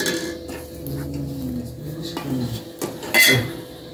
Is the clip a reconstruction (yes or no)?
no